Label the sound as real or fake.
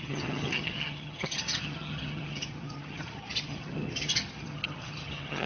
fake